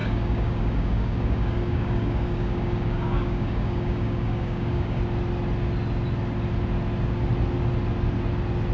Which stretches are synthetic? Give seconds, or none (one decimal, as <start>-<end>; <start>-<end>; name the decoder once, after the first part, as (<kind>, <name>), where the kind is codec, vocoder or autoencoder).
0.0-5.0 (codec, DAC)